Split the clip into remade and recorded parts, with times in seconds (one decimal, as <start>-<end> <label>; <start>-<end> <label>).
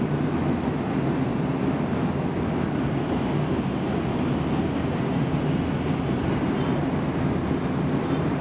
0.0-8.4 recorded